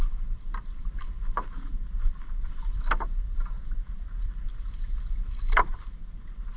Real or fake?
fake